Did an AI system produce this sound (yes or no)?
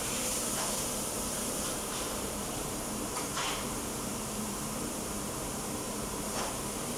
yes